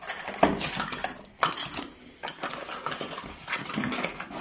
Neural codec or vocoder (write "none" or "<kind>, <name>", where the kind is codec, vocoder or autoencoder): none